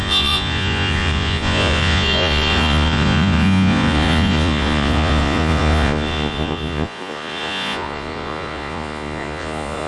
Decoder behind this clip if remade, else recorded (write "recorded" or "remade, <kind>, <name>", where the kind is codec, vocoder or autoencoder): remade, vocoder, Vocos